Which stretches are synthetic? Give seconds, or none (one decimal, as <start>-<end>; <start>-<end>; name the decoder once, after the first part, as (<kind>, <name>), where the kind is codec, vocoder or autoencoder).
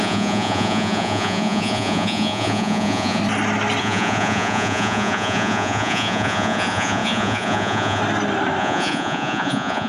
0.0-3.2 (vocoder, Vocos); 3.8-8.0; 8.6-9.9